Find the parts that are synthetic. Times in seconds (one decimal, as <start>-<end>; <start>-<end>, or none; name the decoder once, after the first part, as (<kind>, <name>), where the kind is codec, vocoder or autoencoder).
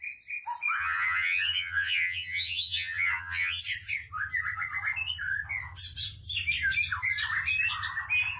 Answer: 0.8-3.6 (vocoder, HiFi-GAN)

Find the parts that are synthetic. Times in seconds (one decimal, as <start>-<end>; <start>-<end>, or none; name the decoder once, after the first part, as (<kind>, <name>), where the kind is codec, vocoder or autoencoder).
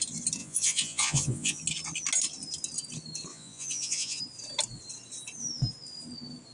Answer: 0.4-1.6 (vocoder, Vocos); 3.3-4.2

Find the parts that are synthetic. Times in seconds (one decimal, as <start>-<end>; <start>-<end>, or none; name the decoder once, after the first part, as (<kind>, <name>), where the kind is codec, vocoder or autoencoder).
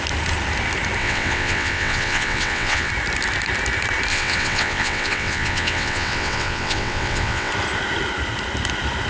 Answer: 1.0-2.9 (vocoder, WaveNeXt); 4.1-7.5